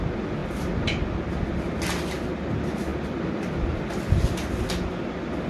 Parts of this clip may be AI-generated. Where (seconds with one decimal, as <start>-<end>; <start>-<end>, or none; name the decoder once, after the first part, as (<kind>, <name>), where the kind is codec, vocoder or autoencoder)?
none